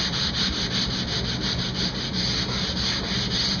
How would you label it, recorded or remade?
recorded